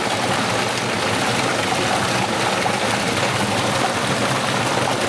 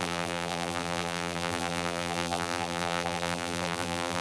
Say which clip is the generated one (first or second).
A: second